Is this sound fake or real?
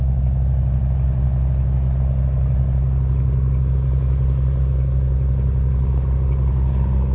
real